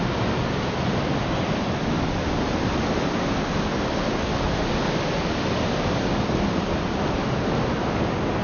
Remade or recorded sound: recorded